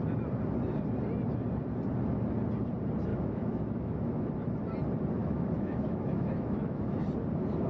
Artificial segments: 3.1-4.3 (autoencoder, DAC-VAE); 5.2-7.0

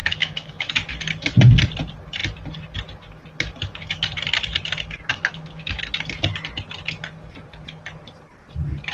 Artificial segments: 0.0-0.7 (autoencoder, DAC-VAE); 5.1-5.8

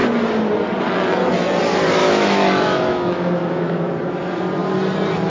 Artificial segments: 2.0-3.9 (autoencoder, DAC-VAE)

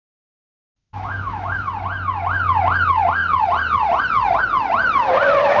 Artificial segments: 0.8-1.7 (autoencoder, DAC-VAE)